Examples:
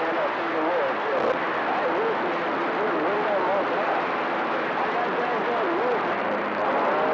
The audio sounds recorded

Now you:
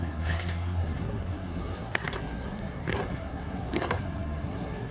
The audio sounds remade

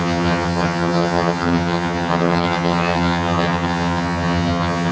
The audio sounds remade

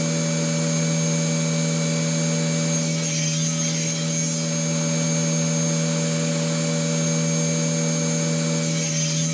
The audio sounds recorded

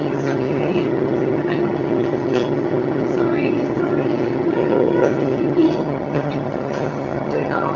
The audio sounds remade